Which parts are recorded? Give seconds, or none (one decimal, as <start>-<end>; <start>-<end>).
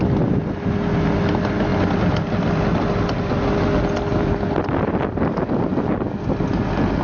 0.0-7.0